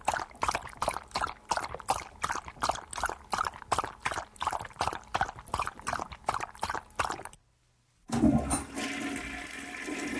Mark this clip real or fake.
real